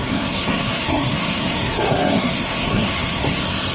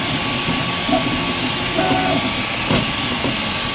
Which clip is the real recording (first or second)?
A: second